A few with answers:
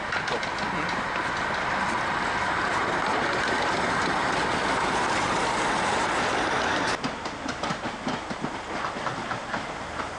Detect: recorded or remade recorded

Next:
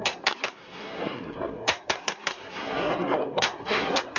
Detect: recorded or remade remade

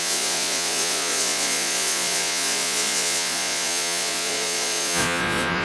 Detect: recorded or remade remade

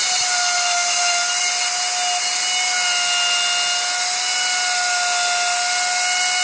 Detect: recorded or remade recorded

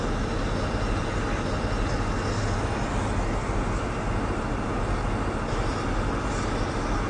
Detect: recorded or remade recorded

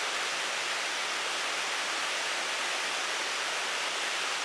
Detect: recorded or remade recorded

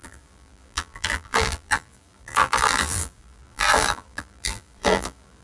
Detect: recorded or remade remade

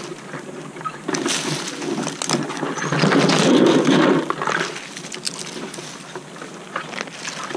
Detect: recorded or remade recorded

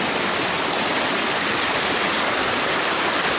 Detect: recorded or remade recorded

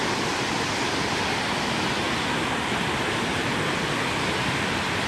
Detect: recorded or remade recorded